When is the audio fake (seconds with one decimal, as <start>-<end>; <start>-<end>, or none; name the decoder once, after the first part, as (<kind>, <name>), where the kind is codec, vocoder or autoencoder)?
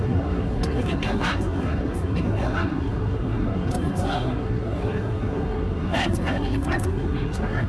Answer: 0.0-7.7 (codec, SNAC)